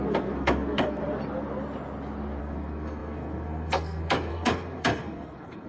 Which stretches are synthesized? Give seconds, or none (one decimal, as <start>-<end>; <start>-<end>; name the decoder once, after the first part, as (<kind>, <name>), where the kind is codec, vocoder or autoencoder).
0.0-1.0 (codec, SNAC); 2.4-5.7